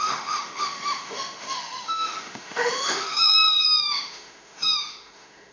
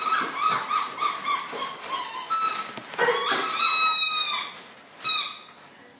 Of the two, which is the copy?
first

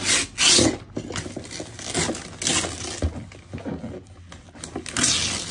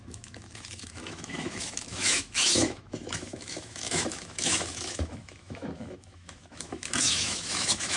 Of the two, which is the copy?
second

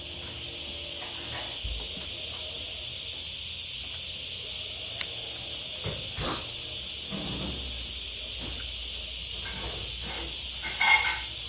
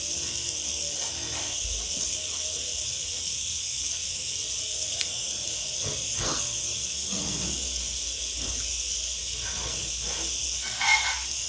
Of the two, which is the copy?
second